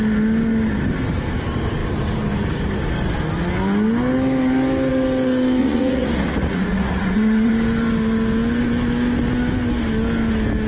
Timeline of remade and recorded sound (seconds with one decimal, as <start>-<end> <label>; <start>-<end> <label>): 0.0-5.6 recorded; 5.6-7.5 remade; 7.5-10.7 recorded